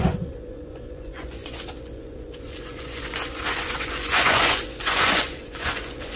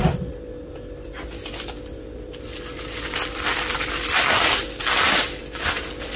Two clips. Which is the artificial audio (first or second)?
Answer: first